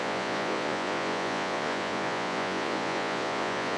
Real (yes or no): no